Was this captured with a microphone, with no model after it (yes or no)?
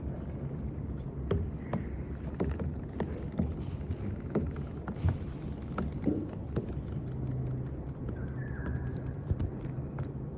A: yes